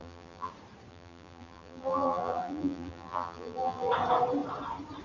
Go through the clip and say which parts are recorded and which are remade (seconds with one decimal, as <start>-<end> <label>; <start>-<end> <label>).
0.0-0.5 remade; 0.5-0.9 recorded; 0.9-3.9 remade; 3.9-5.0 recorded